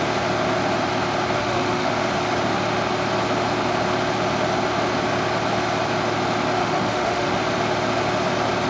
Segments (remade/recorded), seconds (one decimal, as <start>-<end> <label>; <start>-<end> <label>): 0.0-1.4 recorded; 1.4-1.9 remade; 1.9-6.6 recorded; 6.6-7.3 remade; 7.3-8.7 recorded